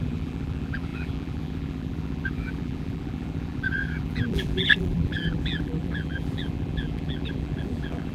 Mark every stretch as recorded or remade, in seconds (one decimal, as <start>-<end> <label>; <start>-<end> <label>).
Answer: 0.0-8.1 remade